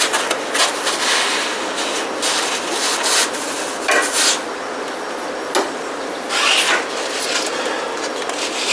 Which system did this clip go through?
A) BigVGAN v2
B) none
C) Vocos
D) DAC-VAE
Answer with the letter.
B